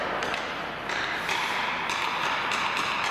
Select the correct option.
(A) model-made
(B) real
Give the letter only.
B